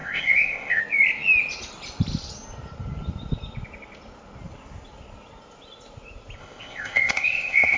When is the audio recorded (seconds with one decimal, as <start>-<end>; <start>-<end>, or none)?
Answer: 0.8-6.4